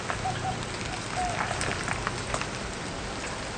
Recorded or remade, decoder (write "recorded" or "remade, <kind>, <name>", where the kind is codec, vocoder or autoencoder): recorded